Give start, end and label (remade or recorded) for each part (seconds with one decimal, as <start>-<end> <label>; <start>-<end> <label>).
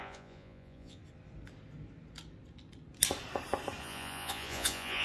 0.0-1.0 remade; 1.0-3.8 recorded; 3.8-5.0 remade